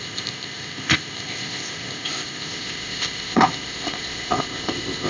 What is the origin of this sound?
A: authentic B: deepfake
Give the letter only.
B